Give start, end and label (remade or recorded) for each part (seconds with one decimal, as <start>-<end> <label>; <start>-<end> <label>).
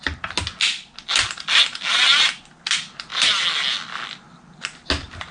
0.0-5.3 recorded